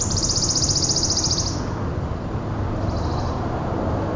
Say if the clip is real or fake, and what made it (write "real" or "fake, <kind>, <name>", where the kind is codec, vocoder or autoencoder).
real